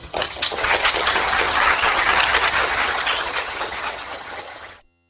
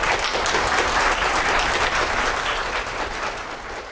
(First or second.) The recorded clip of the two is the second